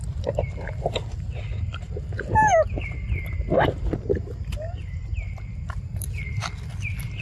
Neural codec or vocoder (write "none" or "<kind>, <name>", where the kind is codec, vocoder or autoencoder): none